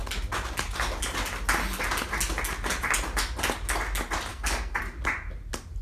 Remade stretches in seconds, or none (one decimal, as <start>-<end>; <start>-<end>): 4.3-4.8